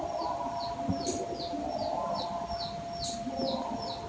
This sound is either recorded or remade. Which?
recorded